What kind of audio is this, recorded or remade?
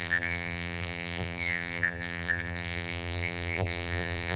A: remade